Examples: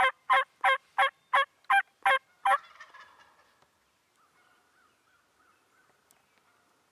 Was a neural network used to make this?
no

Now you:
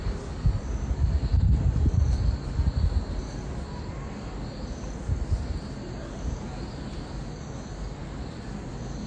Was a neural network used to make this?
no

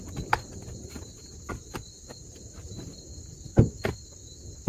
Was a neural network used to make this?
no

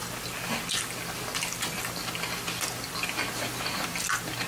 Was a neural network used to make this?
no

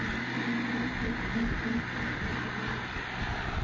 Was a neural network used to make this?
no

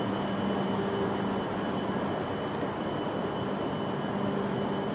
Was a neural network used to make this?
no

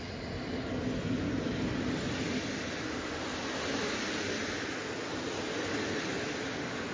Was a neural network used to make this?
no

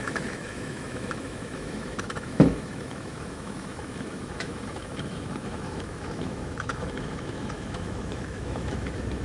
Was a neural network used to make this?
yes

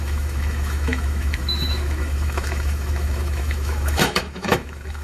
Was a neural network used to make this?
yes